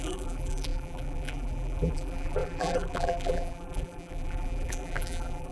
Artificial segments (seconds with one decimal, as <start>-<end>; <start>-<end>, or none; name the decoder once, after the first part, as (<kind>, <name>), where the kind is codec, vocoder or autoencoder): 0.0-5.5 (vocoder, BigVGAN v2)